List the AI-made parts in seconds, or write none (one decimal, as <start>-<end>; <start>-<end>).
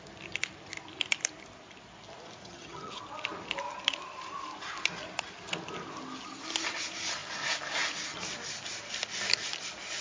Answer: 2.4-3.0